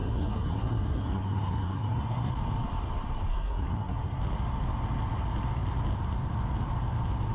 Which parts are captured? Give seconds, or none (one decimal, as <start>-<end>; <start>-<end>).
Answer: 2.3-3.3; 4.2-7.3